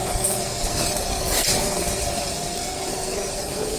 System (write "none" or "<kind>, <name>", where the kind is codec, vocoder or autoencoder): codec, SNAC